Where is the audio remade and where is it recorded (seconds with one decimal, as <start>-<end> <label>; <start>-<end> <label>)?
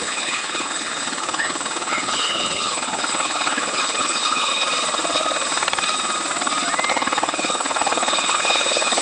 0.0-4.5 remade; 4.5-6.9 recorded; 6.9-9.0 remade